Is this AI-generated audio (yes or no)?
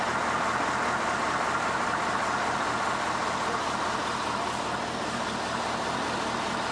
no